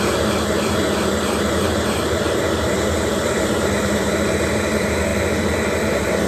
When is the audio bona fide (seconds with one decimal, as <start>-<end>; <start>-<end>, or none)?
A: none